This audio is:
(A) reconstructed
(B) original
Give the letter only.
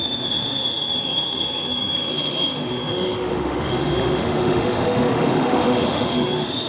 A